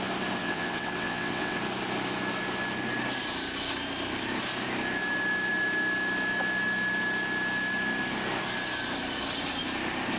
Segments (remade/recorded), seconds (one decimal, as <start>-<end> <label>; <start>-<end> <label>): 0.0-0.4 recorded; 0.4-1.6 remade; 1.6-10.2 recorded